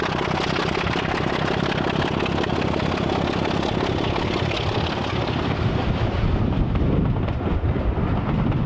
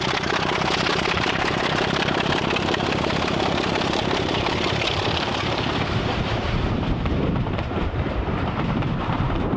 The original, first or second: first